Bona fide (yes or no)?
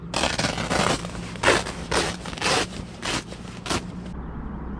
yes